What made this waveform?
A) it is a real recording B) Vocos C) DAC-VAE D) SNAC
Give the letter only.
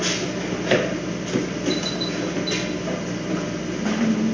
A